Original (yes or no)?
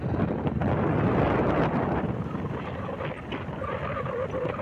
yes